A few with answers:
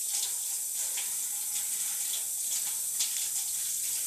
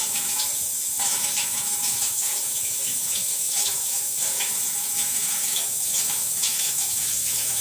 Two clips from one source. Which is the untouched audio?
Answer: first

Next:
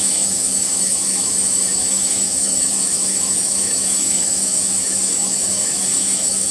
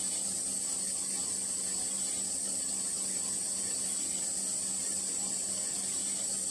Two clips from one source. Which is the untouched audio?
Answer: second